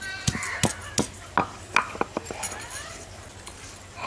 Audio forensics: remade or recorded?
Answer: recorded